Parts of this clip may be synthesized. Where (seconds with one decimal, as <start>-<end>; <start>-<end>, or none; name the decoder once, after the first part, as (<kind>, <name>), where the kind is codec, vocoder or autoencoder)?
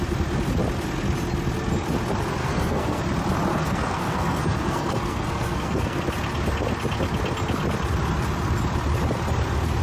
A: 2.4-3.0 (codec, SNAC); 3.5-6.0